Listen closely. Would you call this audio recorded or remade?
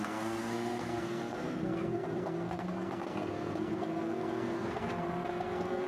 remade